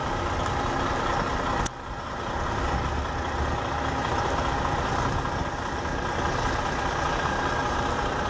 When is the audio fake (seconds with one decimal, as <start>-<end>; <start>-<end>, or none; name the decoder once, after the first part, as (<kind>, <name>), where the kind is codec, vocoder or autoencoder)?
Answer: none